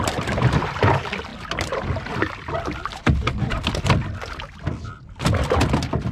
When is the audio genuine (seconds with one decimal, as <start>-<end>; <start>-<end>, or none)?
0.0-6.1